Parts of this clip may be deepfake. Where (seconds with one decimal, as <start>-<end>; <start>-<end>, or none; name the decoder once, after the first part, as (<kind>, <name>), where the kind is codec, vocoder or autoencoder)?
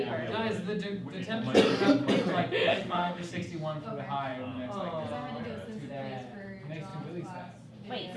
2.7-3.3 (autoencoder, DAC-VAE)